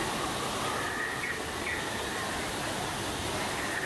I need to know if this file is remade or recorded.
recorded